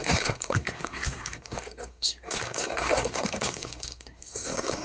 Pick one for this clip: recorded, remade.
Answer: remade